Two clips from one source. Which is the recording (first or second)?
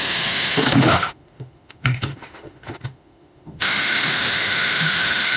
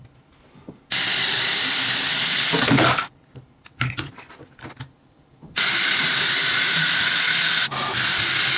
second